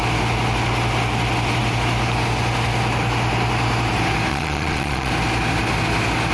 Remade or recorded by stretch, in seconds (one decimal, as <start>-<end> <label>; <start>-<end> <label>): 0.0-4.3 recorded; 4.3-5.1 remade; 5.1-6.3 recorded